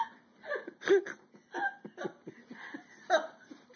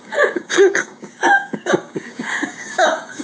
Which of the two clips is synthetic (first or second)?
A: second